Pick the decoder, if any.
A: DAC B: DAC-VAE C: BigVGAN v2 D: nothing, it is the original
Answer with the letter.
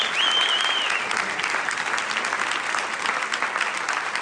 D